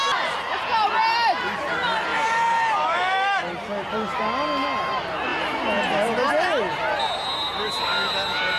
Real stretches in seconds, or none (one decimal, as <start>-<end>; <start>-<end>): 0.0-2.1; 4.2-5.3; 6.3-8.6